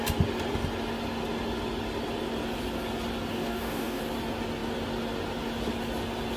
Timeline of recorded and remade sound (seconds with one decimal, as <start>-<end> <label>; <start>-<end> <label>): 0.0-3.3 recorded; 3.3-4.0 remade; 4.0-6.4 recorded